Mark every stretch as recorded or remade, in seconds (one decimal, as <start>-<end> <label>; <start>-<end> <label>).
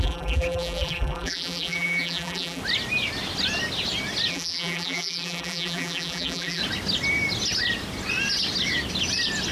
0.0-2.6 remade; 2.6-4.3 recorded; 4.3-6.6 remade; 6.6-9.5 recorded